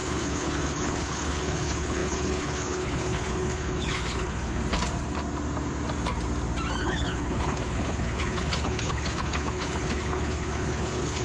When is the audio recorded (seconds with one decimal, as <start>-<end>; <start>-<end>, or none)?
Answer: 4.6-6.8